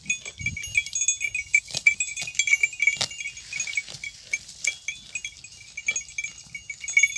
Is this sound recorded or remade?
recorded